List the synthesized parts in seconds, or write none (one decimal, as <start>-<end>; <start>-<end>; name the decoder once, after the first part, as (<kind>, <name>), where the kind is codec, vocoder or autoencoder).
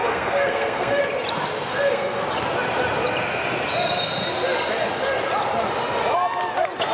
0.0-1.0 (codec, SNAC); 1.7-2.2